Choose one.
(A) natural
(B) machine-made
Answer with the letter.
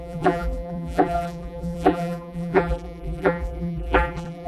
B